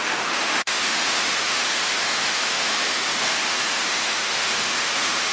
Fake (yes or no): yes